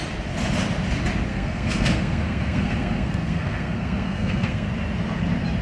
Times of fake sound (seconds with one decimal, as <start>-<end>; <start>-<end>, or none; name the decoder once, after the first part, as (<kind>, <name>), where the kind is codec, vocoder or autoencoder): 1.3-4.7 (codec, SNAC)